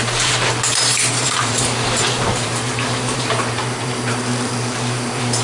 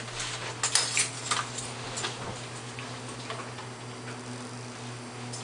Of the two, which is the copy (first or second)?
first